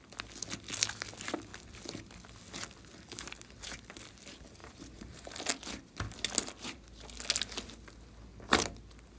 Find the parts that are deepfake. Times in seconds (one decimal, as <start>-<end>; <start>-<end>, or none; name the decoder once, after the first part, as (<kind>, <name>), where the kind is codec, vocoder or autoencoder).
4.6-5.3 (vocoder, BigVGAN v2)